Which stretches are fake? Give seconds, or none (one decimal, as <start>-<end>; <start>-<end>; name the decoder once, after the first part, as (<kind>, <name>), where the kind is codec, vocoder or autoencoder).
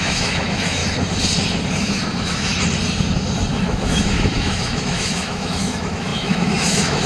0.0-0.8 (autoencoder, DAC-VAE); 1.7-2.5; 3.5-7.1